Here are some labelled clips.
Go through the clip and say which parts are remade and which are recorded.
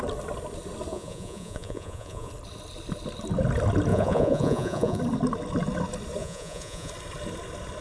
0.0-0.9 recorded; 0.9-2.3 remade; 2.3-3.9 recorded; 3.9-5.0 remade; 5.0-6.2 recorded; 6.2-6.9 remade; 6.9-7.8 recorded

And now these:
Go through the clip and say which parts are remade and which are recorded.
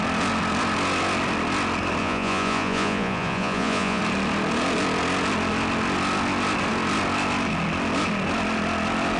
0.0-2.0 recorded; 2.0-4.0 remade; 4.0-9.2 recorded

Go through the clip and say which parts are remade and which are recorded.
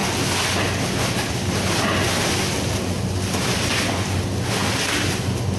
0.0-5.6 recorded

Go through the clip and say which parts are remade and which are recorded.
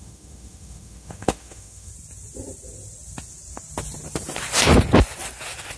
0.0-1.9 remade; 1.9-5.8 recorded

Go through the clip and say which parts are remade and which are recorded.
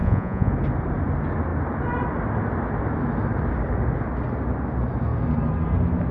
0.0-0.5 remade; 0.5-6.1 recorded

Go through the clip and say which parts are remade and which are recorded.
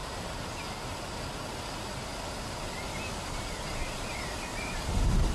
0.0-5.3 recorded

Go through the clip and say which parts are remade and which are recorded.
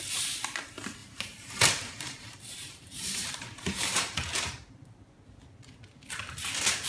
0.0-1.0 recorded; 1.0-4.7 remade; 4.7-6.9 recorded